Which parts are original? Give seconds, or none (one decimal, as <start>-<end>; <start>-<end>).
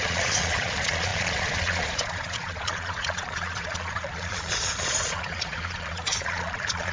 none